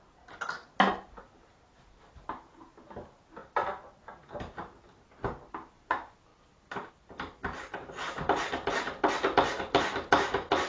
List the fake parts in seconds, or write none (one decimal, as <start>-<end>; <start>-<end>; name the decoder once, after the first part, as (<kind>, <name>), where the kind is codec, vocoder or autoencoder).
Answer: none